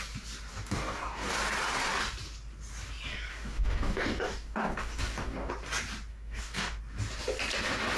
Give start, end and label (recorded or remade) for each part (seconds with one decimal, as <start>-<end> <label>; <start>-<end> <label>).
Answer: 0.0-0.5 recorded; 0.5-1.3 remade; 1.3-3.3 recorded; 3.3-5.5 remade; 5.5-6.1 recorded; 6.1-6.8 remade; 6.8-8.0 recorded